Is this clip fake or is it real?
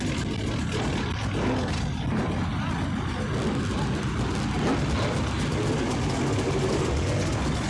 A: real